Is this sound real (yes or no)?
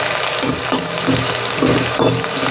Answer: yes